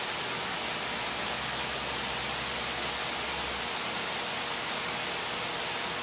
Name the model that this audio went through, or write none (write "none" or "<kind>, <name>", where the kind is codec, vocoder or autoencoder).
none